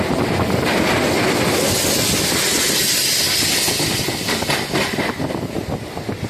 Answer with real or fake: real